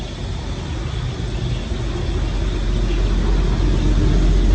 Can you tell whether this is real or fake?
real